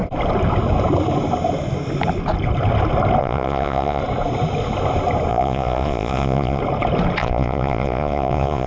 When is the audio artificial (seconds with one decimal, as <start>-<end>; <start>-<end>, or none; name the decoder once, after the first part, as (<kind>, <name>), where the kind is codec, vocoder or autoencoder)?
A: 3.2-4.0 (vocoder, Vocos); 5.3-6.6; 7.2-8.7